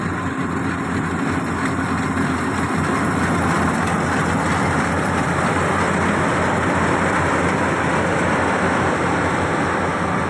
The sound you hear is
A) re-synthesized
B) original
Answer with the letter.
B